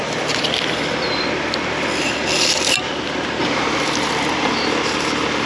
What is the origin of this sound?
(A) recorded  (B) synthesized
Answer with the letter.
A